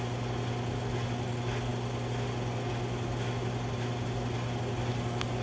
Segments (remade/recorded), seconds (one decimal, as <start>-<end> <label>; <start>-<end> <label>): 0.0-5.4 recorded